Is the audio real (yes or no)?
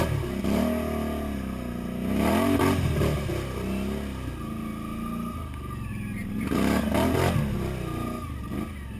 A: yes